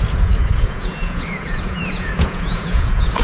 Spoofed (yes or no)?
yes